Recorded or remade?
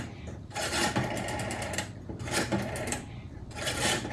remade